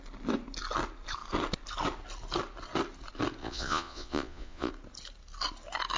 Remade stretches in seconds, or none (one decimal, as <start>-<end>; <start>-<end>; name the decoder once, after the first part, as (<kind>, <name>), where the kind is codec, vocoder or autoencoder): 3.4-4.7 (vocoder, Vocos)